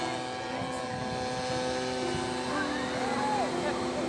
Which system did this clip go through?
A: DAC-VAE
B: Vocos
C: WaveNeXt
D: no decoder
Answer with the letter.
D